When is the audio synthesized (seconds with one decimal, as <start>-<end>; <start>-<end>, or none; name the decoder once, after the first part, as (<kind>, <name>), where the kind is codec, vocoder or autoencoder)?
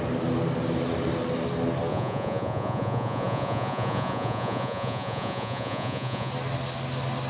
1.9-6.3 (vocoder, Vocos)